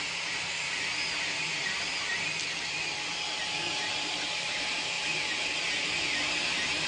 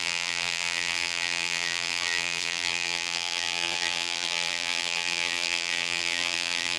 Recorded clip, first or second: first